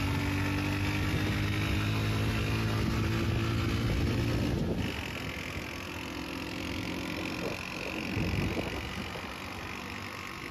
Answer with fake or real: real